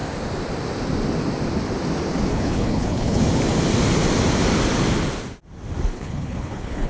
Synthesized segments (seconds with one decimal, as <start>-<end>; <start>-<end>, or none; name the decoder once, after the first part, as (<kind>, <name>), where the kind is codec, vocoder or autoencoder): 2.3-3.2 (codec, HILCodec); 5.9-6.9